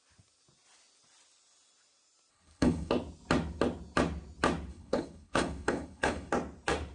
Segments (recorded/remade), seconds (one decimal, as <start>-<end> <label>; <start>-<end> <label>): 0.0-2.3 recorded; 2.3-2.9 remade; 2.9-4.7 recorded; 4.7-6.3 remade; 6.3-6.9 recorded